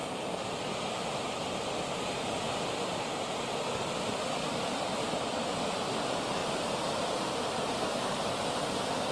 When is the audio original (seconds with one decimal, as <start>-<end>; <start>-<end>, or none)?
2.4-2.9; 5.9-6.4